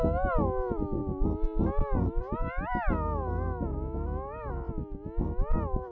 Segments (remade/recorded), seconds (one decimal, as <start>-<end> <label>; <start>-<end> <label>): 0.0-5.9 recorded